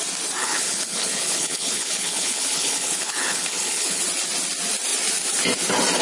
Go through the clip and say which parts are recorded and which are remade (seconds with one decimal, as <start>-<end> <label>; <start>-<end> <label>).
0.0-0.4 recorded; 0.4-4.0 remade; 4.0-6.0 recorded